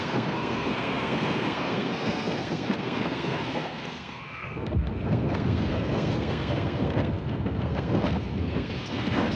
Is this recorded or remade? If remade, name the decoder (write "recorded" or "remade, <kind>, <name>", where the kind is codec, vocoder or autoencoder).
remade, codec, SNAC